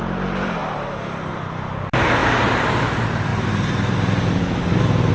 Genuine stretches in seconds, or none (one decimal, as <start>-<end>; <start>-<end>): 3.3-5.1